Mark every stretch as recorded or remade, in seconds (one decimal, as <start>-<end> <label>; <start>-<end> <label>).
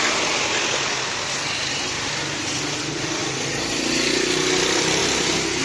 0.0-5.6 recorded